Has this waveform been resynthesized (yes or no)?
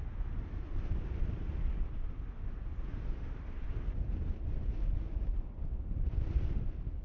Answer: no